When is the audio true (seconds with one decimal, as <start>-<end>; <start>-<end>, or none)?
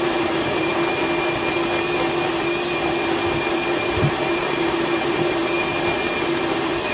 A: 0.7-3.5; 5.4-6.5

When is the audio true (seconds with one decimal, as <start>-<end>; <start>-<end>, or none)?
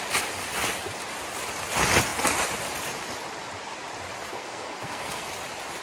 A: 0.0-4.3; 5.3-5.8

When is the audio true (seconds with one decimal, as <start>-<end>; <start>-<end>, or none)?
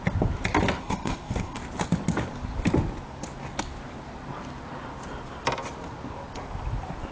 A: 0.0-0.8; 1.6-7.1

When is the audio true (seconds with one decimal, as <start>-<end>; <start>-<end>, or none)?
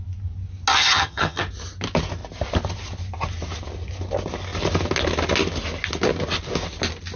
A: 0.0-0.7; 1.4-7.2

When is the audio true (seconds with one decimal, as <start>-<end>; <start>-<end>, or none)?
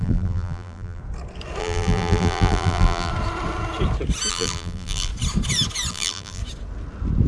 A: 1.0-1.6; 3.1-4.3; 5.1-5.9; 6.4-7.3